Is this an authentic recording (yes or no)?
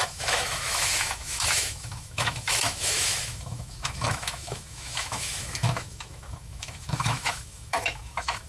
no